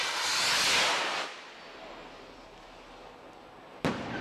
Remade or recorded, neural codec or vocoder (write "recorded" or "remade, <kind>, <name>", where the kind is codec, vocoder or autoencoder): recorded